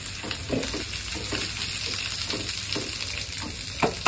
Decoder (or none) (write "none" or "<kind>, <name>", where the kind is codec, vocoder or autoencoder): none